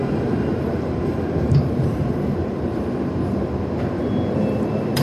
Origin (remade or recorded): remade